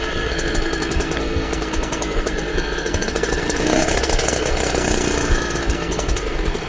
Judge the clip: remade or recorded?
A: remade